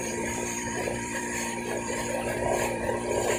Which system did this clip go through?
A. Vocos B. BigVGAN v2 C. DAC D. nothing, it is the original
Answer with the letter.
B